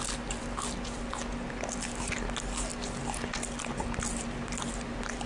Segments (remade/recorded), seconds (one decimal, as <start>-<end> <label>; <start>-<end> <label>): 0.0-5.3 recorded